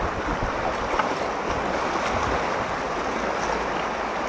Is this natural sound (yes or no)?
yes